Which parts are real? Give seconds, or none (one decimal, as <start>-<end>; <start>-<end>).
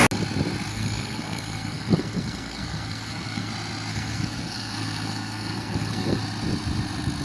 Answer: 0.0-0.7; 3.5-3.9; 6.2-7.2